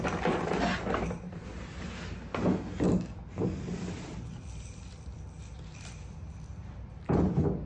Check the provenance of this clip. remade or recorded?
recorded